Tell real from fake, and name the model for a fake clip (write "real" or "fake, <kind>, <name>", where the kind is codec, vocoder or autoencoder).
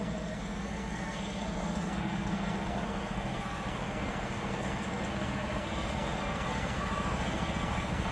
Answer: fake, codec, SNAC